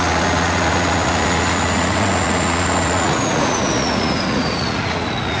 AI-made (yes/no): yes